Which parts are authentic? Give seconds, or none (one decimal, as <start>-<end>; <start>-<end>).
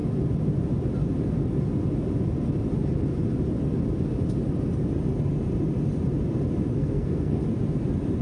0.0-6.7; 7.4-8.2